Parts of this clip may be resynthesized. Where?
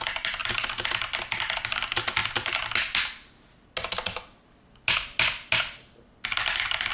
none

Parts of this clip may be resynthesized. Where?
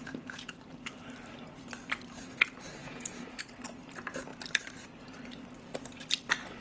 0.0-0.6 (vocoder, Vocos); 2.8-3.4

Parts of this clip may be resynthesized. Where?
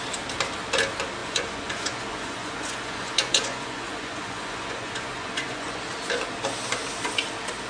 1.2-5.8 (vocoder, Vocos)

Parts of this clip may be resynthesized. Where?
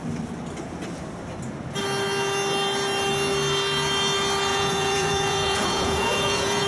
4.5-6.7 (vocoder, Vocos)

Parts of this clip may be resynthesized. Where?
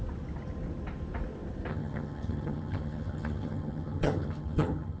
1.7-5.0 (vocoder, HiFi-GAN)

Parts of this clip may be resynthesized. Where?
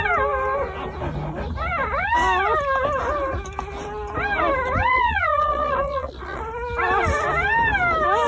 4.9-6.4 (vocoder, Vocos)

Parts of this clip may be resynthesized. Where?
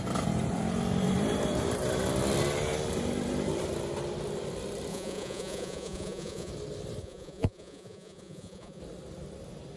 4.9-6.5 (vocoder, Vocos); 7.0-8.8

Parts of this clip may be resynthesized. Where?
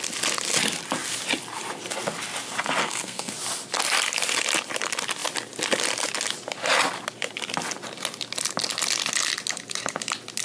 2.8-3.3 (codec, SNAC)